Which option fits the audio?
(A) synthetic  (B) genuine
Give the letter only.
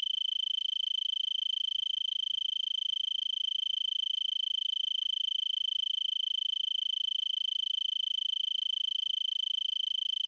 B